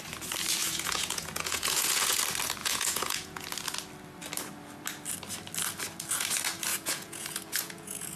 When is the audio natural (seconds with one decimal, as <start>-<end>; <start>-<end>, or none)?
0.0-0.6; 2.2-2.6; 3.4-6.7